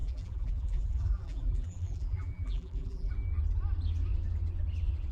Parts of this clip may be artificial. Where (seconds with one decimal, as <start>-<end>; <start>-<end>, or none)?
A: 0.0-3.1